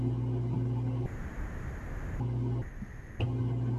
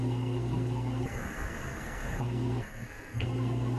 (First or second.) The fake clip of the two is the second